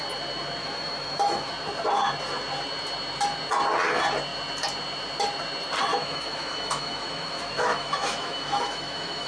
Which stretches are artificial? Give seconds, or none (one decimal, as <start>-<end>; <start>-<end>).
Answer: 0.6-1.5; 5.9-9.3